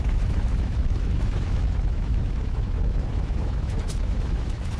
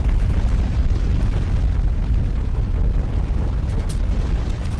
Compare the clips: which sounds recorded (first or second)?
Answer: second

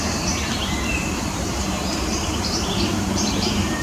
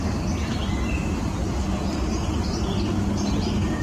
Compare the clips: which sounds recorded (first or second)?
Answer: second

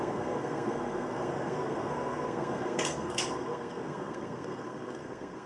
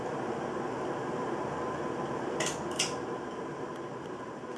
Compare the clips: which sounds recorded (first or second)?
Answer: second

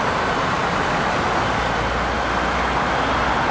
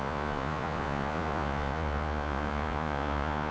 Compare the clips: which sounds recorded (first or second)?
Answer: first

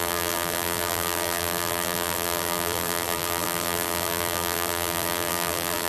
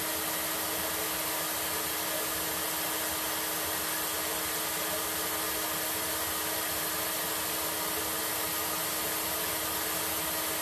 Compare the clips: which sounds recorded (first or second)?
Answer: second